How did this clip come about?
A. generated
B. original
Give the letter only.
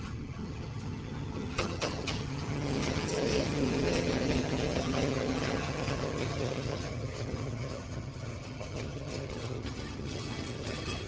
A